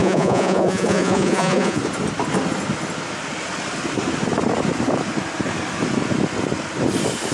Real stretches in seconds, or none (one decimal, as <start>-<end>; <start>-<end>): 1.8-7.3